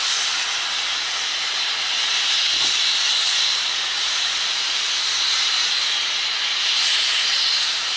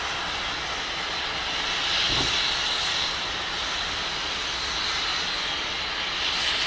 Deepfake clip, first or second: first